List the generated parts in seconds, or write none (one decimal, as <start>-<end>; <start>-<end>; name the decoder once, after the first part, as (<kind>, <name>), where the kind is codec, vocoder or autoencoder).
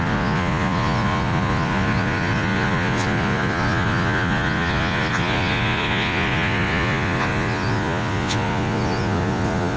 0.0-9.8 (vocoder, Vocos)